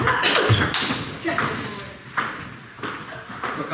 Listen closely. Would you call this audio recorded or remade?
recorded